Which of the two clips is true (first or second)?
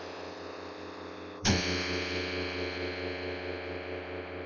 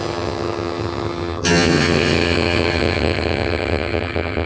first